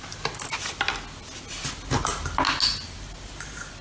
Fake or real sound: real